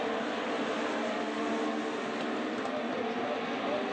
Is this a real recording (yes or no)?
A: yes